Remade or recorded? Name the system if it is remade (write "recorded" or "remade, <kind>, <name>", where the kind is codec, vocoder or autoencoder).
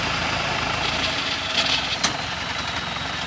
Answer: recorded